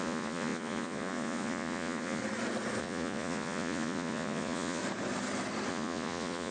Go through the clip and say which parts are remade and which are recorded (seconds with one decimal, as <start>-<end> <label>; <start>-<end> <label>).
0.0-2.2 remade; 2.2-2.8 recorded; 2.8-4.8 remade; 4.8-5.7 recorded; 5.7-6.5 remade